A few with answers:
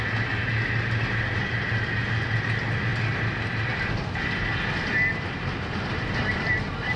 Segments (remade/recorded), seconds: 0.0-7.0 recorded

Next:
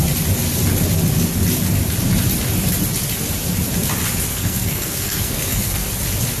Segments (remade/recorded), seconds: 0.0-4.3 recorded; 4.3-5.9 remade; 5.9-6.4 recorded

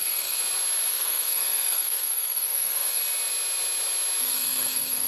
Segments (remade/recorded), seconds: 0.0-0.4 remade; 0.4-0.9 recorded; 0.9-3.0 remade; 3.0-4.2 recorded; 4.2-5.1 remade